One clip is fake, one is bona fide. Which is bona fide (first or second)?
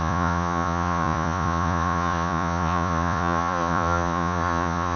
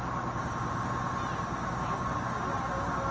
second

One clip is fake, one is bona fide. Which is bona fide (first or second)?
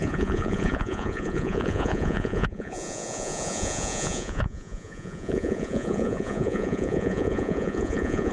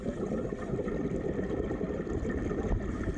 second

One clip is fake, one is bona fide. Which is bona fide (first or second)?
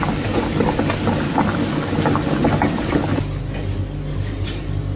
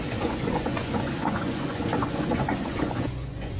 first